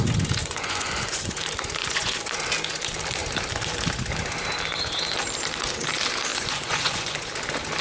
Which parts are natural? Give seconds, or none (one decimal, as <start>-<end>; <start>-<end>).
0.0-0.4; 1.4-1.8; 2.3-6.3; 7.3-7.8